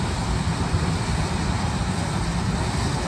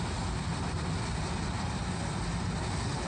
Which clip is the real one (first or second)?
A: second